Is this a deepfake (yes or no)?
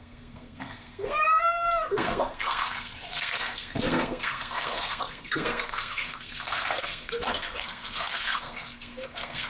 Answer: yes